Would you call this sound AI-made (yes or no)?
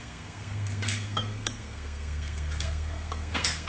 yes